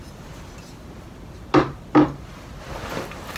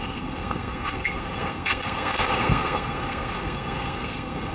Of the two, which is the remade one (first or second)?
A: second